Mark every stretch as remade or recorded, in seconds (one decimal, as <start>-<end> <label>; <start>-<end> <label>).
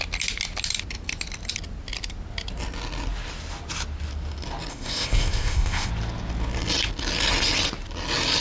0.0-4.7 recorded; 4.7-5.9 remade; 5.9-8.4 recorded